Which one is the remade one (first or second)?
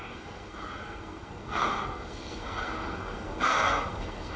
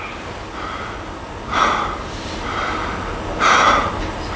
first